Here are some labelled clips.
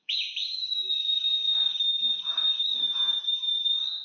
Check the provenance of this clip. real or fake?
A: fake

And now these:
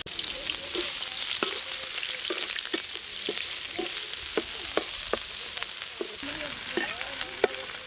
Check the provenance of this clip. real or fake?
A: real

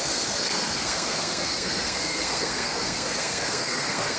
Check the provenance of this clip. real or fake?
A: fake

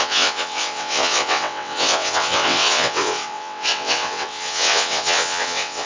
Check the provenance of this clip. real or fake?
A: fake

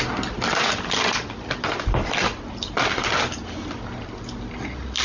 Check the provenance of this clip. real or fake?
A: real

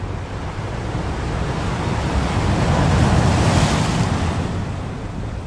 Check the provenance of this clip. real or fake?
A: real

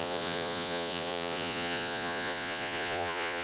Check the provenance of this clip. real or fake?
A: fake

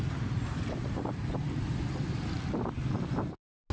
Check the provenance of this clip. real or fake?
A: real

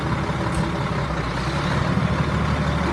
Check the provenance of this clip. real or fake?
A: real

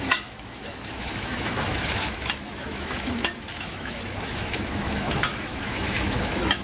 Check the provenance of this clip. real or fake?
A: fake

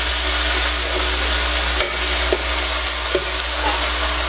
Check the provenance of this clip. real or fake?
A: real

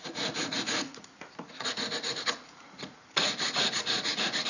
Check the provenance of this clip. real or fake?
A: fake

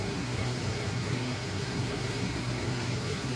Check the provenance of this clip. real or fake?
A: fake